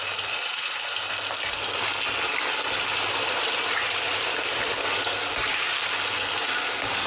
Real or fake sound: real